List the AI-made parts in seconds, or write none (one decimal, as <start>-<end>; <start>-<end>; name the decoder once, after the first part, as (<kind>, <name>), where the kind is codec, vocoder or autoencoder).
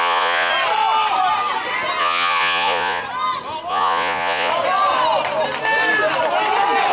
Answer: 0.0-0.5 (vocoder, Vocos); 2.0-3.0; 3.7-4.5